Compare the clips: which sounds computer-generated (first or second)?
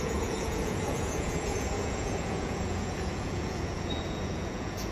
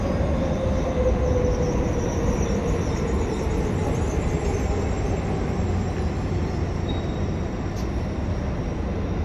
first